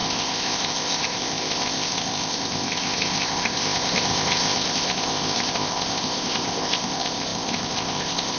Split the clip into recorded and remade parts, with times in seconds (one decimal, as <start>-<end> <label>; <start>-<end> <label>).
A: 0.0-8.4 remade